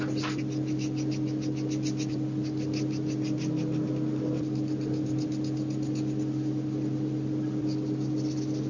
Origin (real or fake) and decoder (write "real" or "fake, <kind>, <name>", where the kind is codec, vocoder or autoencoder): real